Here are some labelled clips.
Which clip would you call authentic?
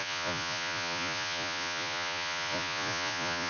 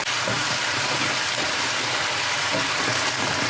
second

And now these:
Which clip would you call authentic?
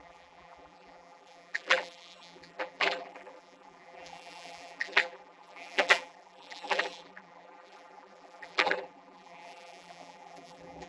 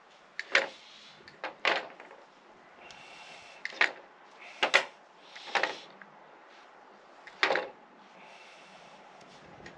second